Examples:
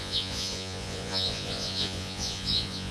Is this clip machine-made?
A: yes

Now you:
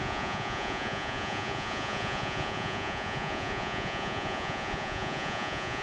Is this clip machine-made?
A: yes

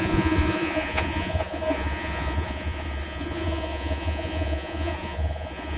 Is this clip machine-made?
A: yes